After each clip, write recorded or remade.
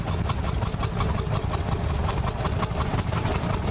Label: recorded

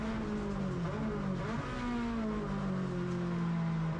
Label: recorded